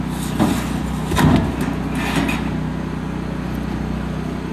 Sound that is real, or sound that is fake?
real